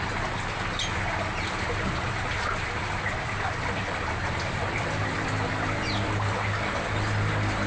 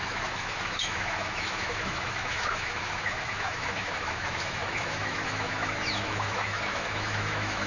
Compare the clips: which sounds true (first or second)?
first